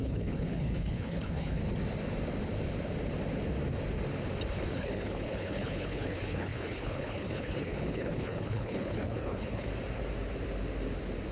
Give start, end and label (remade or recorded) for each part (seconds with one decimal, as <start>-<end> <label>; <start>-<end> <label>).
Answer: 0.0-1.6 remade; 1.6-4.5 recorded; 4.5-9.7 remade; 9.7-11.3 recorded

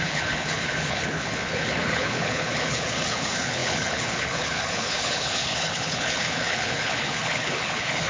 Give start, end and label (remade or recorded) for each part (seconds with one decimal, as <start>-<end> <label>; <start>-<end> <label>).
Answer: 0.0-8.1 remade